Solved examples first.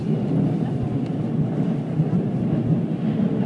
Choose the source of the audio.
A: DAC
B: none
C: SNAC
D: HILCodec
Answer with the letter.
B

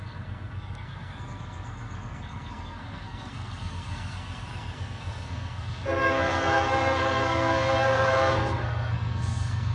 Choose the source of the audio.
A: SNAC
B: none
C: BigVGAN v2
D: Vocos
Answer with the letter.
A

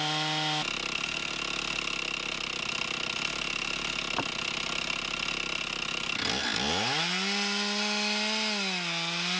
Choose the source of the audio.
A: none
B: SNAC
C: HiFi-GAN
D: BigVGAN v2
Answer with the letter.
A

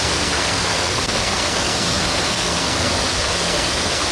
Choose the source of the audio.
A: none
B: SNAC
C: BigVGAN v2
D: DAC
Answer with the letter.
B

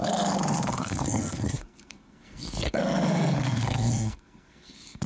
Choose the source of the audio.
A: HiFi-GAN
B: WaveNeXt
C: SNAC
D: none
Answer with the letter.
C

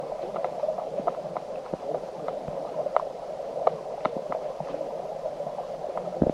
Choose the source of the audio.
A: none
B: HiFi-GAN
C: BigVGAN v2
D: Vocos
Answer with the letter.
A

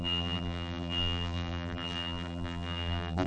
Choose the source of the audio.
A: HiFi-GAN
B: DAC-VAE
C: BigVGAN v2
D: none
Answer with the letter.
C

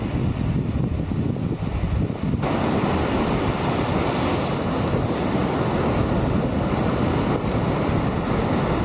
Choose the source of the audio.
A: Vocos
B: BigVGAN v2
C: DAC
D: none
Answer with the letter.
D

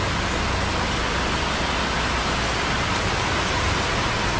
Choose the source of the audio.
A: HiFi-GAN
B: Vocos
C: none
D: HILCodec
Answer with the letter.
C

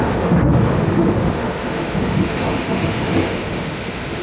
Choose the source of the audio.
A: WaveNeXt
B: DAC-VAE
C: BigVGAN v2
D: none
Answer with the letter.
B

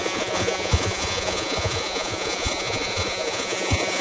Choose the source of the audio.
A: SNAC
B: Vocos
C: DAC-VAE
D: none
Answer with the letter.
B